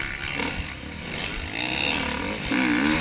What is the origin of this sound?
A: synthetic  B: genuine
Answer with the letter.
B